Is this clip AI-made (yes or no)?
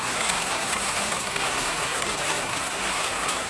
yes